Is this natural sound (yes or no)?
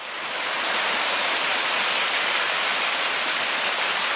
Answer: yes